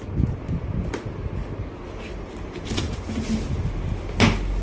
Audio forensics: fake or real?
real